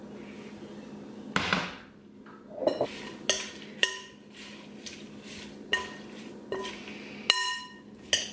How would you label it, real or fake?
real